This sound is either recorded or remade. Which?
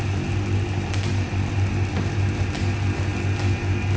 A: recorded